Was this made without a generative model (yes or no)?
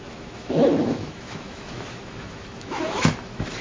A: no